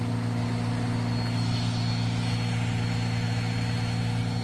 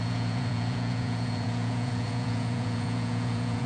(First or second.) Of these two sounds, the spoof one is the second